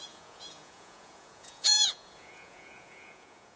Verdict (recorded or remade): remade